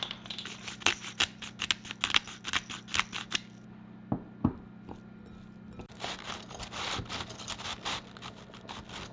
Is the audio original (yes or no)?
yes